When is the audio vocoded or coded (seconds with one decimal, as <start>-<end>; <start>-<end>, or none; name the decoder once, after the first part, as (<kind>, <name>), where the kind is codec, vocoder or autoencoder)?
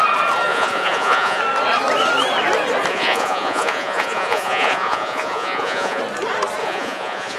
0.5-1.4 (vocoder, Vocos); 2.9-6.0; 6.6-7.4